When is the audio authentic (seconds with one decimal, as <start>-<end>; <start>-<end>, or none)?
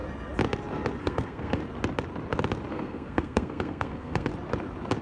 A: 0.0-1.0; 1.6-2.7; 4.3-5.0